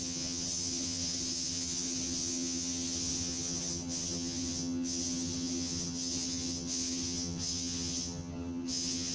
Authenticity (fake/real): fake